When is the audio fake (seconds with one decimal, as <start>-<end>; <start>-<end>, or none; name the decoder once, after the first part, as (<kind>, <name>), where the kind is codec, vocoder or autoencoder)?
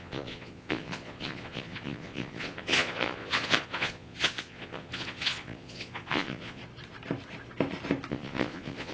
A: 0.0-6.6 (vocoder, Vocos); 8.1-8.9